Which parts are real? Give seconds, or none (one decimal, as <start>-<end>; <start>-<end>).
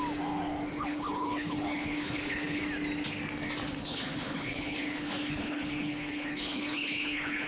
0.0-0.7; 2.6-3.8